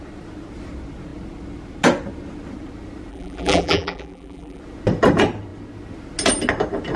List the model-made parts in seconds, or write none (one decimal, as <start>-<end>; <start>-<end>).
3.1-4.6